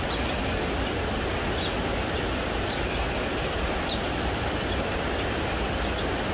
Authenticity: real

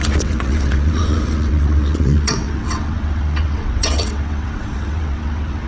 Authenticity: fake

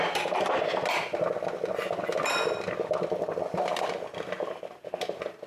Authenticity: real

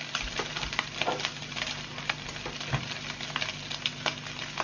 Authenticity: real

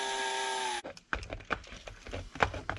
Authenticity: real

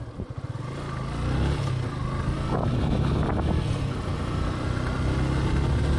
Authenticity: real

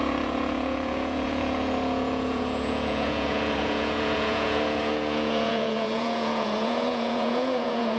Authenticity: fake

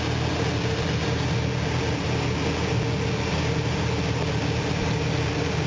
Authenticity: real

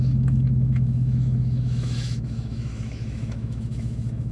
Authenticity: fake